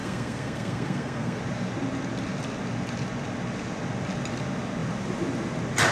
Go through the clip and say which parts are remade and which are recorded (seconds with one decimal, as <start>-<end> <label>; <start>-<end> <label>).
0.0-1.4 remade; 1.4-5.9 recorded